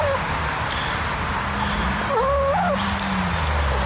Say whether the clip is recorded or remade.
recorded